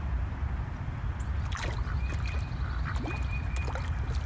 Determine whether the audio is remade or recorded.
recorded